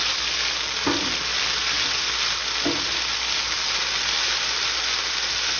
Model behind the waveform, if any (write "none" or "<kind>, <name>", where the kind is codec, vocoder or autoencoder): none